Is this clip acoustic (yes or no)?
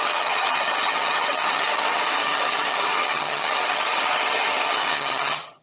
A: no